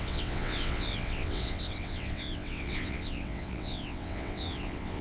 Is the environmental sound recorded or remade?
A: remade